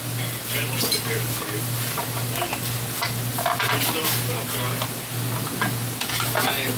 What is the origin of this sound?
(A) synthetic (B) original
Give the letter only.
B